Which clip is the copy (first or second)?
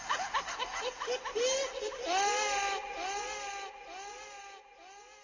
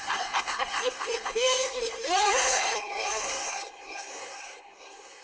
second